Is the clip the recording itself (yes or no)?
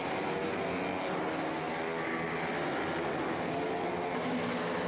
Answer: yes